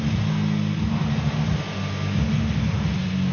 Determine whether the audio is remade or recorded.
recorded